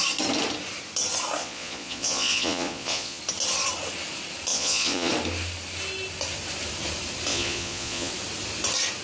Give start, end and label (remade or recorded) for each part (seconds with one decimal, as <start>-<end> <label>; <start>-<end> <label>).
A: 0.0-1.4 recorded; 1.4-3.2 remade; 3.2-4.5 recorded; 4.5-5.1 remade; 5.1-7.3 recorded; 7.3-8.1 remade; 8.1-9.0 recorded